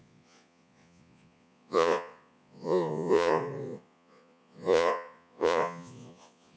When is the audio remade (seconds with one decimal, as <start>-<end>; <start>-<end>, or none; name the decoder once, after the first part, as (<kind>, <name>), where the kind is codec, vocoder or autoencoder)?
0.0-6.6 (vocoder, Vocos)